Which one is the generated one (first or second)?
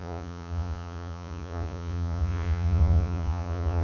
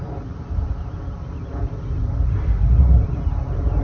first